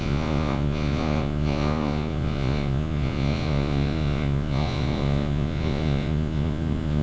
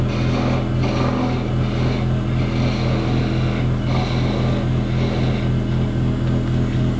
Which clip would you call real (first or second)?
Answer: second